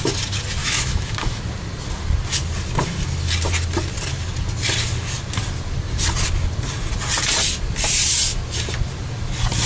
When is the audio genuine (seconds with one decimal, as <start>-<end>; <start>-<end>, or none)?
0.0-0.6; 1.4-9.7